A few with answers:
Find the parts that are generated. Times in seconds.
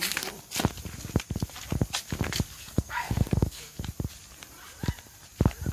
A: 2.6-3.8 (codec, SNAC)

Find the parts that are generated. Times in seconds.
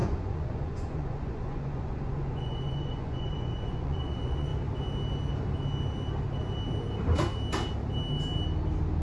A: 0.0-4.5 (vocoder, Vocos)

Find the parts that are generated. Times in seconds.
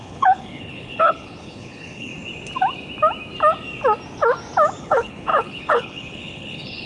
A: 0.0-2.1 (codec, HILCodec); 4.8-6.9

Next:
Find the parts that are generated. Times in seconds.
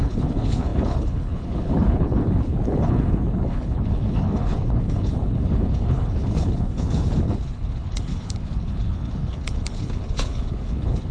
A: 0.0-11.1 (codec, HILCodec)